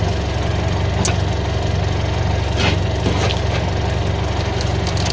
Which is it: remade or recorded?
recorded